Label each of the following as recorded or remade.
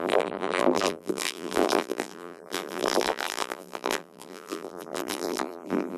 remade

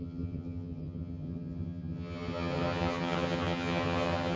remade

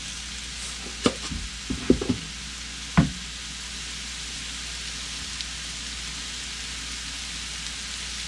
recorded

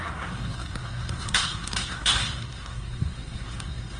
remade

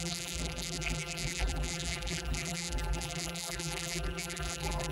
remade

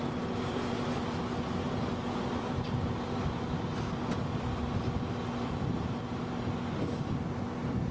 recorded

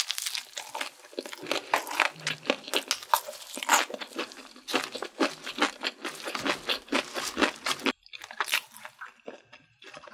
recorded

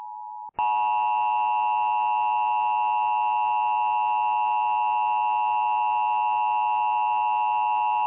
recorded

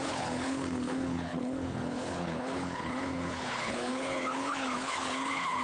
remade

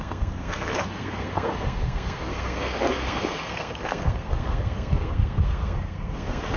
remade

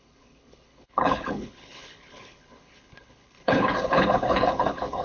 remade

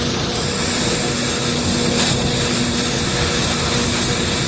recorded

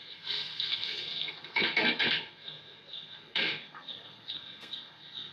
remade